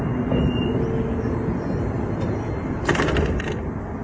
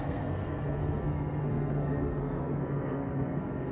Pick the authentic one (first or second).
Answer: first